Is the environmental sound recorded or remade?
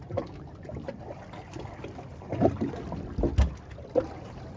recorded